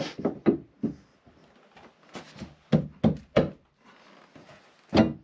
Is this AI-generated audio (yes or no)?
no